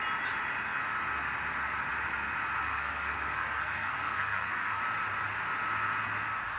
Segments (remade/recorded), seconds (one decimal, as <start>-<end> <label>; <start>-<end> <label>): 0.0-2.6 recorded; 2.6-4.8 remade; 4.8-6.6 recorded